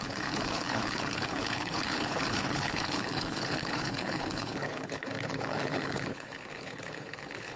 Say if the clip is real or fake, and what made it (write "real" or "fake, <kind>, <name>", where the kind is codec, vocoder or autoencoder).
fake, codec, HILCodec